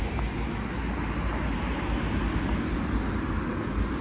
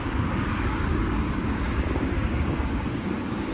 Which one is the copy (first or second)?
second